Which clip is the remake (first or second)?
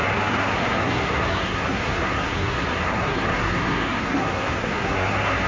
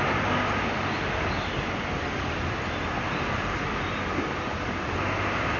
first